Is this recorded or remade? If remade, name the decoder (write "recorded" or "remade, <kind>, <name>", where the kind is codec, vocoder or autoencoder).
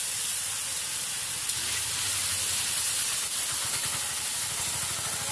recorded